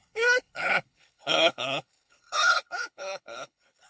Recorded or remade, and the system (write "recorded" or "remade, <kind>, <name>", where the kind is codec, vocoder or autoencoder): remade, codec, HILCodec